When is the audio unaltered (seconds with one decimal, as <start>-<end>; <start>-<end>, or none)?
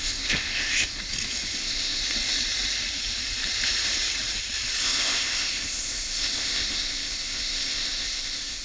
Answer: 1.0-1.6; 2.0-4.8